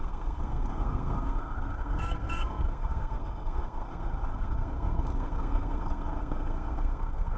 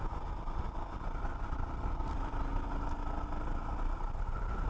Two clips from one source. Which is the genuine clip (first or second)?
second